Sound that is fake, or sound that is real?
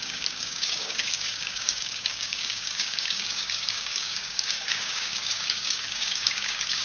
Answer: fake